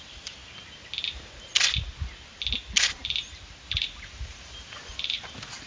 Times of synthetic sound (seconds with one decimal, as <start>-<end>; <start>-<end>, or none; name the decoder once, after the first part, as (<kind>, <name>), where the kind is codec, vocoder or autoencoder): 0.0-0.4 (vocoder, BigVGAN v2); 2.8-5.7

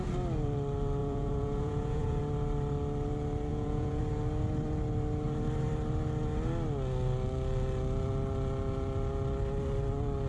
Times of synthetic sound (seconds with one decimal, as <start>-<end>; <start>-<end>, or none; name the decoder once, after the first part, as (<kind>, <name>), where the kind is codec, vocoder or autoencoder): 1.0-2.2 (vocoder, Vocos); 3.5-4.0

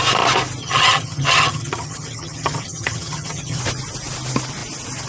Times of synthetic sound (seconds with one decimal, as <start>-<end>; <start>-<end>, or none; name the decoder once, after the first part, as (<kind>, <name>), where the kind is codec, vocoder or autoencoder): 0.6-3.6 (vocoder, HiFi-GAN)

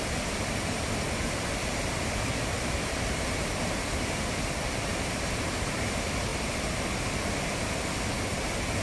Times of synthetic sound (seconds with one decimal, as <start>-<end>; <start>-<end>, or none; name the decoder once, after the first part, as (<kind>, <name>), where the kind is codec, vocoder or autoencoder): 1.6-4.4 (vocoder, BigVGAN v2)

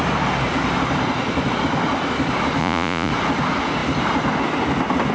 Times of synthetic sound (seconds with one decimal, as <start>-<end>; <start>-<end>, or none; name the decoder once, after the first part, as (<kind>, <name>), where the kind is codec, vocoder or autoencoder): 2.6-3.1 (vocoder, Vocos)

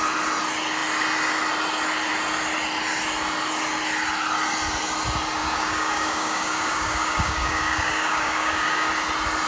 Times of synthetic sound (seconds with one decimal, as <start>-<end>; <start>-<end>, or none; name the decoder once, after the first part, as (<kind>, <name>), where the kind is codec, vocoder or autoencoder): 5.4-8.9 (codec, DAC)

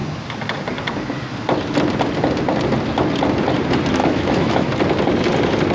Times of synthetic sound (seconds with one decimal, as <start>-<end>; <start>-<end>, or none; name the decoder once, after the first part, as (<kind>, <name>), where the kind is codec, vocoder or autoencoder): 4.0-4.7 (autoencoder, DAC-VAE)